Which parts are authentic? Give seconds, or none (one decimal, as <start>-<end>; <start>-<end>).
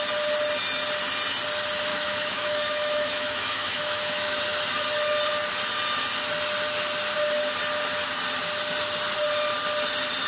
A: 0.0-1.9; 4.4-10.3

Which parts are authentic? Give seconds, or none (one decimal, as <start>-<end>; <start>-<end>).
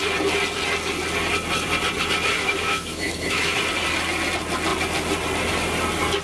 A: 0.0-2.3; 3.6-6.2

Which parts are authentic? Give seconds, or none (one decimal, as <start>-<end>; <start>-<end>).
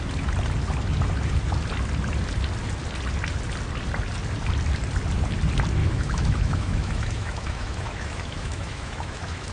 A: 0.0-5.8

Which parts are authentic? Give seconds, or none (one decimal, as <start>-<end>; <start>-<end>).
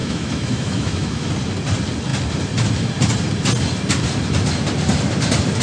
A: 1.3-5.6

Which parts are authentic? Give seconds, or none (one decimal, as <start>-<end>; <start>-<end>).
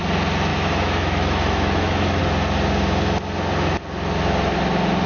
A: 0.0-0.5; 2.2-5.1